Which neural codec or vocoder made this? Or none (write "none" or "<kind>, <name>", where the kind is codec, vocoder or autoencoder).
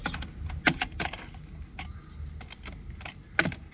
none